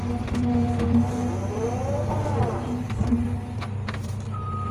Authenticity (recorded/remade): recorded